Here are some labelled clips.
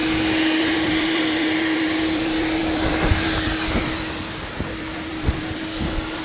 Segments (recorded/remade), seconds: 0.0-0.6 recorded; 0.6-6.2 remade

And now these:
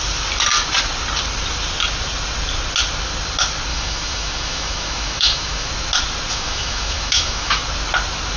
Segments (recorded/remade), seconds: 0.0-3.7 recorded; 3.7-5.7 remade; 5.7-6.3 recorded; 6.3-7.6 remade; 7.6-8.4 recorded

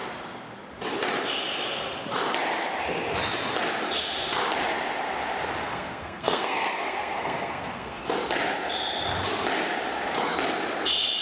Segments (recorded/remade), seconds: 0.0-5.6 recorded; 5.6-8.0 remade; 8.0-11.2 recorded

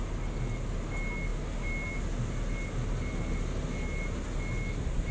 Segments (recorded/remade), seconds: 0.0-5.1 recorded

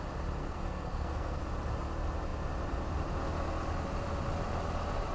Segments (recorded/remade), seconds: 0.0-0.4 recorded; 0.4-1.4 remade; 1.4-5.1 recorded

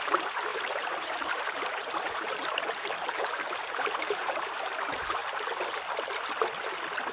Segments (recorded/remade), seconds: 0.0-5.2 remade; 5.2-7.1 recorded

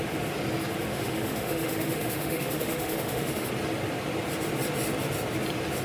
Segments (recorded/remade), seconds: 0.0-0.9 recorded; 0.9-3.5 remade; 3.5-5.8 recorded

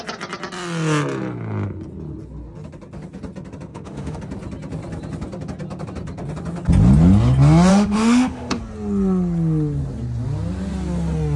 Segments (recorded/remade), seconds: 0.0-3.7 recorded; 3.7-4.2 remade; 4.2-7.7 recorded; 7.7-8.6 remade; 8.6-11.4 recorded